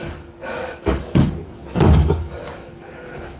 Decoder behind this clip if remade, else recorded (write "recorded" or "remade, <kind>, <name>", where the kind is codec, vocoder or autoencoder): remade, codec, DAC